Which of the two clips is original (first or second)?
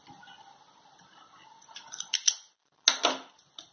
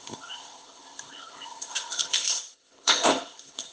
first